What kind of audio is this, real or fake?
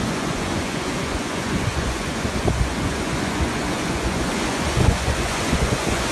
fake